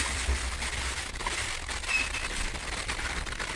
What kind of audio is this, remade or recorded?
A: remade